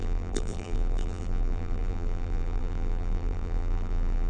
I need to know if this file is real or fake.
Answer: fake